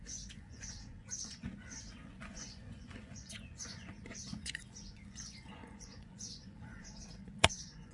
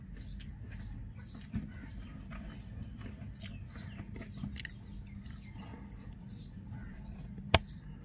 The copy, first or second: first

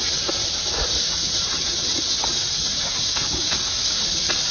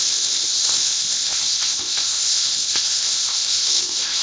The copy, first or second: second